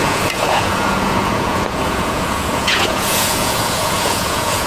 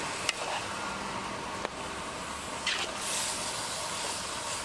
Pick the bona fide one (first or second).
second